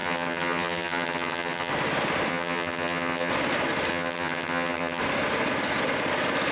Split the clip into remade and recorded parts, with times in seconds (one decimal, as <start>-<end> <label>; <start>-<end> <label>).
0.0-1.7 remade; 1.7-2.3 recorded; 2.3-3.3 remade; 3.3-3.9 recorded; 3.9-5.0 remade; 5.0-6.5 recorded